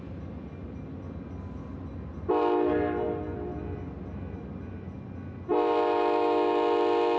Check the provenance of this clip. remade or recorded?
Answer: recorded